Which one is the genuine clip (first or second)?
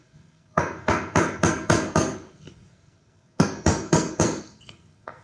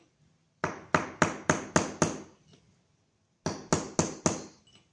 second